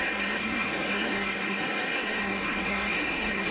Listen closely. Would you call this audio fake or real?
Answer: fake